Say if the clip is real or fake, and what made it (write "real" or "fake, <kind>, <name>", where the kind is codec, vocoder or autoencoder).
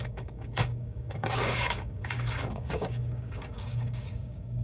fake, codec, DAC